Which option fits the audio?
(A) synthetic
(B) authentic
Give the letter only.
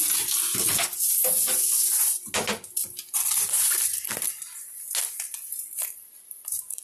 B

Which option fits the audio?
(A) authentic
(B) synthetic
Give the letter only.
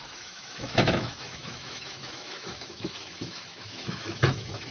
B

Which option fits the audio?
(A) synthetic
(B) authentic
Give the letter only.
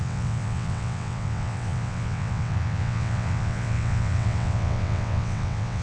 A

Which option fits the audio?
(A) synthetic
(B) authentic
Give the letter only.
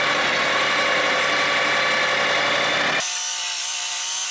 B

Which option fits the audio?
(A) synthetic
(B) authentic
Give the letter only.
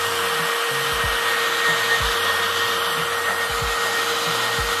B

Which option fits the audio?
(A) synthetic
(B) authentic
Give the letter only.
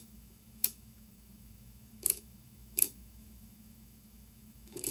A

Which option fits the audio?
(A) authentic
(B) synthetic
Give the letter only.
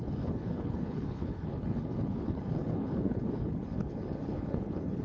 B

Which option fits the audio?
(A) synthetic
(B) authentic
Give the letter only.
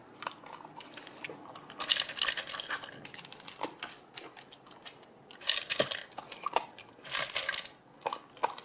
B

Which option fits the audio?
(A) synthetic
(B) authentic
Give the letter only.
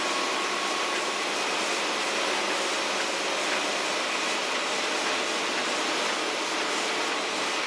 B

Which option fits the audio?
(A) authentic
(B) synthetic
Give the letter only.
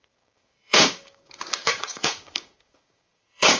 B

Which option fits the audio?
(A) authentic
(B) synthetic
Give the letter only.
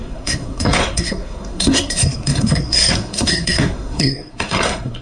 B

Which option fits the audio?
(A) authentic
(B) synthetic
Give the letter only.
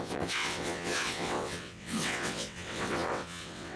B